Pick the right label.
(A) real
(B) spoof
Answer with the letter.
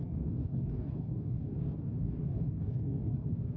B